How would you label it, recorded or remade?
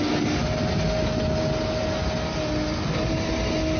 recorded